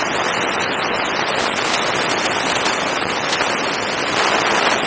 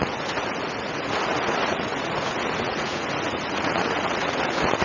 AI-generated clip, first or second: second